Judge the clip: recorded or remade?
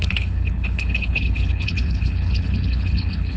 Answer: remade